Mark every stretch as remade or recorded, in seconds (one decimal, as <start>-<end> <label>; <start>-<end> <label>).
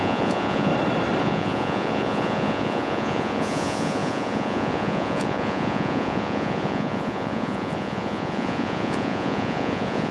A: 0.0-0.7 remade; 0.7-1.2 recorded; 1.2-10.1 remade